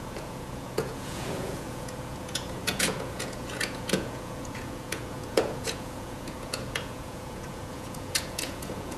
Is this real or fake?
fake